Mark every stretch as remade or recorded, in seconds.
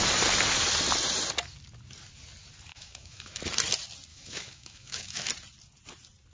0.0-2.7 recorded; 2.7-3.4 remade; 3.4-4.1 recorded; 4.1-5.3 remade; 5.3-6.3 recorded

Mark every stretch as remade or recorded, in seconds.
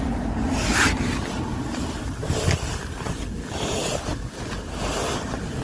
0.0-5.6 recorded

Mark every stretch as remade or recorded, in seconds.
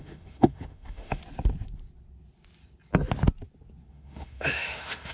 0.0-1.2 remade; 1.2-3.9 recorded; 3.9-5.1 remade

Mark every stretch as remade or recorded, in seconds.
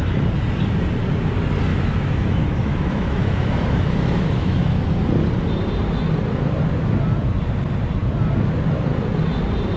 0.0-1.7 recorded; 1.7-4.9 remade; 4.9-9.8 recorded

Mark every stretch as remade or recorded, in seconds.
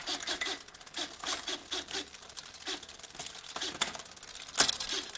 0.0-5.2 recorded